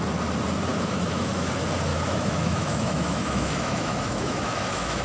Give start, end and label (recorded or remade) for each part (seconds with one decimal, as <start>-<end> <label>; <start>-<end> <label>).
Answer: 0.0-0.7 recorded; 0.7-1.5 remade; 1.5-1.9 recorded; 1.9-5.0 remade